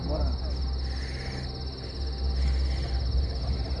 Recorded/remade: recorded